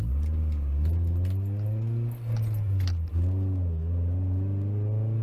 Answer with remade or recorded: recorded